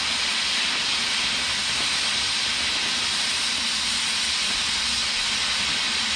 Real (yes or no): yes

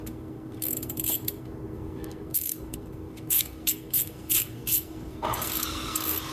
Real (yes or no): no